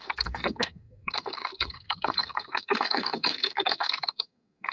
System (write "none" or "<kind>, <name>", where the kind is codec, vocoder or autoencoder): codec, SNAC